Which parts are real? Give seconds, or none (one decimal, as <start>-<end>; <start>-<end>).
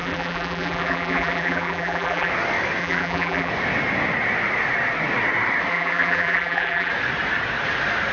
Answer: 2.3-2.8; 3.5-5.7; 6.9-8.1